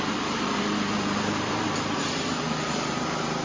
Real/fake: fake